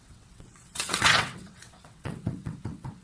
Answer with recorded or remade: remade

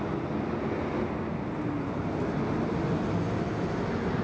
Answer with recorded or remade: recorded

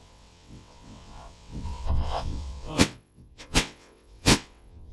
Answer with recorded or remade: remade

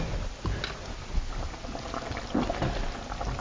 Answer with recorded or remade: recorded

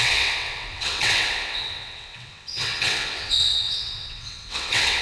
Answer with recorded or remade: remade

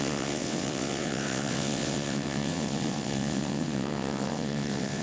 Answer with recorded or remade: remade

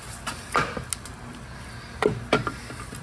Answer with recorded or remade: recorded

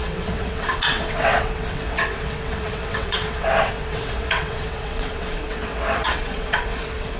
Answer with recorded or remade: remade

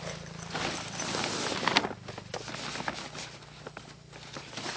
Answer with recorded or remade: recorded